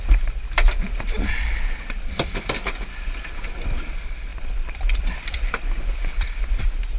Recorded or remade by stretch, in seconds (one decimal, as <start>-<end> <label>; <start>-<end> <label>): 0.0-2.3 recorded; 2.3-7.0 remade